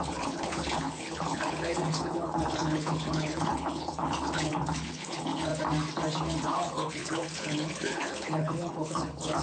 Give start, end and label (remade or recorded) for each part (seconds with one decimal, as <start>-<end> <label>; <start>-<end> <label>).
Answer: 0.0-5.5 remade; 5.5-6.4 recorded; 6.4-9.4 remade